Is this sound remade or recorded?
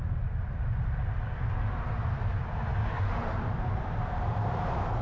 recorded